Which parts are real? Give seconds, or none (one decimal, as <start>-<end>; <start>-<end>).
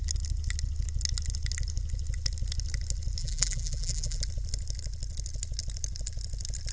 0.0-3.2; 4.2-6.7